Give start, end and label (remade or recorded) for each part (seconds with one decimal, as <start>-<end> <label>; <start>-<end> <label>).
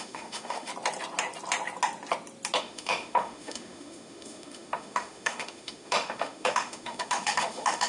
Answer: 0.0-0.7 remade; 0.7-2.6 recorded; 2.6-7.9 remade